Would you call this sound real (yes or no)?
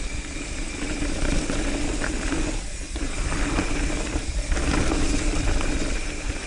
yes